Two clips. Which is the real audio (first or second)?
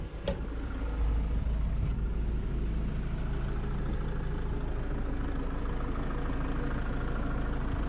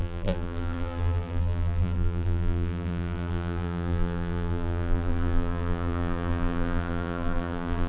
first